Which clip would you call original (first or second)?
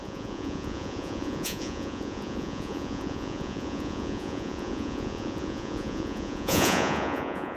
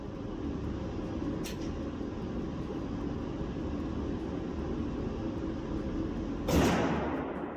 second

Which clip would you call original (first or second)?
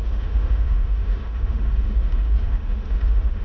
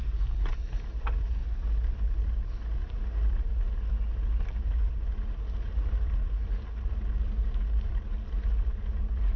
second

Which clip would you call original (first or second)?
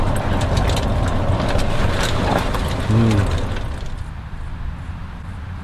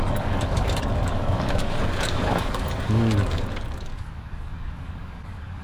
first